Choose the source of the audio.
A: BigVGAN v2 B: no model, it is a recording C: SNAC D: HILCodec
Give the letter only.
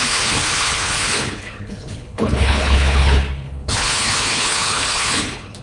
D